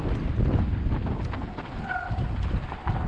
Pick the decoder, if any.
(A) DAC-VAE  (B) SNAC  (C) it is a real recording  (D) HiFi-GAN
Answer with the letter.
C